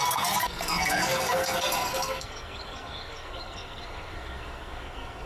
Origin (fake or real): fake